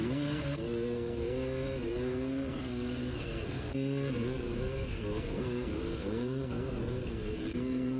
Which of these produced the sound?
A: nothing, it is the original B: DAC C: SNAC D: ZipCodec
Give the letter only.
C